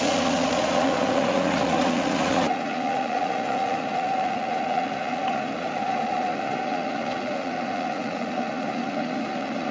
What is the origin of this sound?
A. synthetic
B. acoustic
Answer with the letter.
A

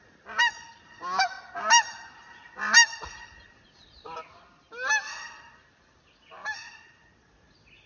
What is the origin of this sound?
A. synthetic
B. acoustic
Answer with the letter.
B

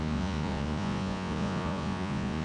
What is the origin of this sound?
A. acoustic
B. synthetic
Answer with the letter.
B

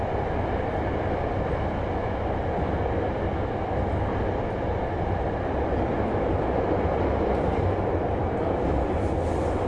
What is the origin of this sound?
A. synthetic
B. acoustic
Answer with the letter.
B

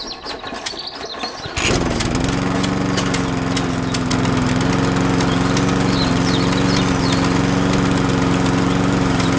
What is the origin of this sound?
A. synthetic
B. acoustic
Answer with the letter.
B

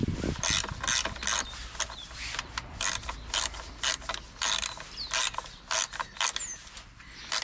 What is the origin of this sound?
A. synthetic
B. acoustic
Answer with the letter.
B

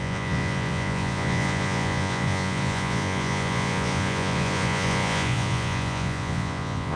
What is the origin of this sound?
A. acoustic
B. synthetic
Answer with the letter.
B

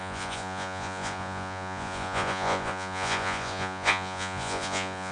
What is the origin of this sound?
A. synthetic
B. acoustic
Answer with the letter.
A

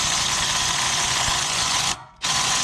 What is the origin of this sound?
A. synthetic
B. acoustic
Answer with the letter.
A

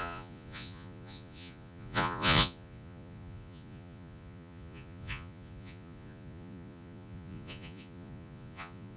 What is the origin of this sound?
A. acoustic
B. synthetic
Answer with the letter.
B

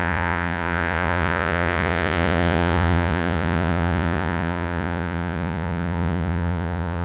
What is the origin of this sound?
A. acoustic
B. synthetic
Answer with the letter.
B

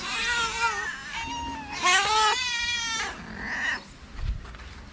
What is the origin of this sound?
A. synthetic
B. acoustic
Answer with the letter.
B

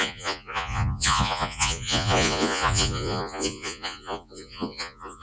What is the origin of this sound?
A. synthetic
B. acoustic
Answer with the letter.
A